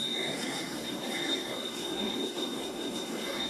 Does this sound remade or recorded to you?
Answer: remade